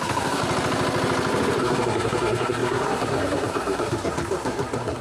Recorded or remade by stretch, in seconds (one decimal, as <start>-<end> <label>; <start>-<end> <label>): 0.0-0.4 remade; 0.4-1.6 recorded; 1.6-5.0 remade